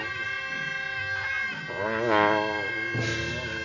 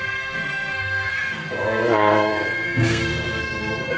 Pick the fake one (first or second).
second